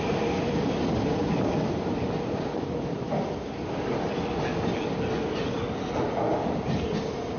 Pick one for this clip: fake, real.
real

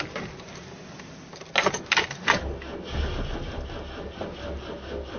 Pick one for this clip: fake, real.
real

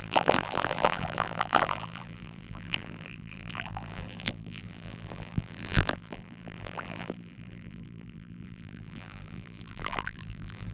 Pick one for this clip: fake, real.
fake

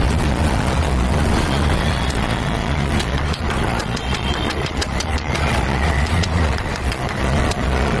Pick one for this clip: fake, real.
fake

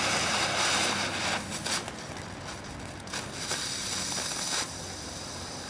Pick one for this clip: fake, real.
real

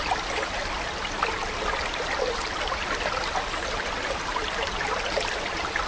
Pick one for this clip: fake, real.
real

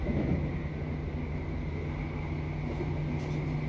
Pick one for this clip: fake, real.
real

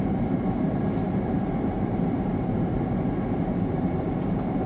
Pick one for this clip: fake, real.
fake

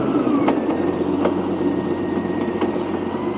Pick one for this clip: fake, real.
real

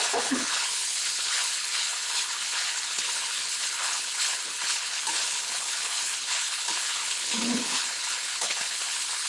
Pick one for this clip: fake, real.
fake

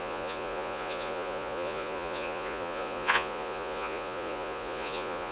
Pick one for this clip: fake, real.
fake